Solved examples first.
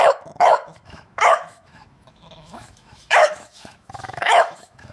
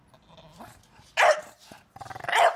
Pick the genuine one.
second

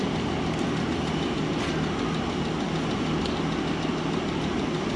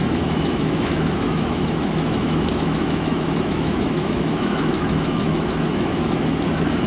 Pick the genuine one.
first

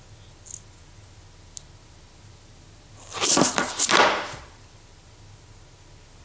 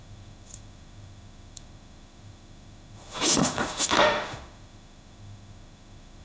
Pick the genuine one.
first